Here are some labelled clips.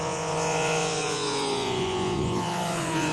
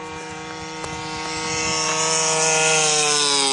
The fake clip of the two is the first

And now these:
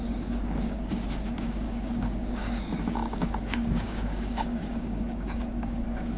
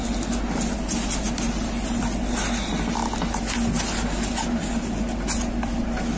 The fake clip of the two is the first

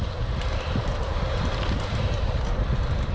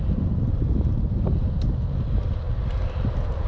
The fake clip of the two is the first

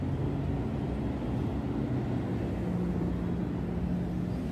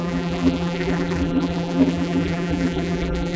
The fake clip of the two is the second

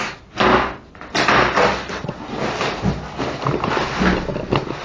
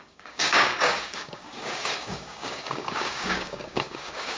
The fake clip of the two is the second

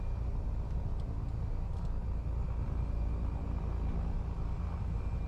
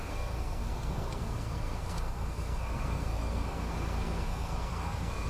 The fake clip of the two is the second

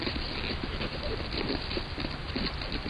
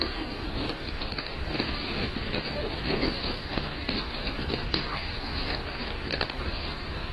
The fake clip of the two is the second